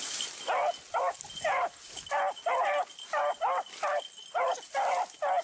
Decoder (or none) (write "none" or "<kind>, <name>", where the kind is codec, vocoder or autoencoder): none